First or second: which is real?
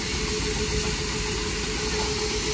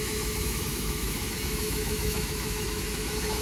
first